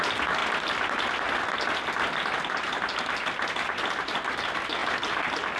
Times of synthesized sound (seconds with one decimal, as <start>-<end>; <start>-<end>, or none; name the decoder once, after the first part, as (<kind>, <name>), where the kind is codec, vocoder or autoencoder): 4.8-5.6 (vocoder, BigVGAN v2)